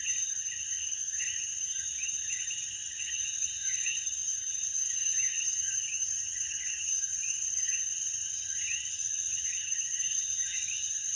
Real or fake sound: fake